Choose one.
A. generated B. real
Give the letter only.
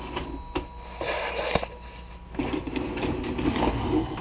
B